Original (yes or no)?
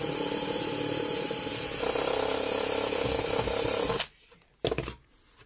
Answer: yes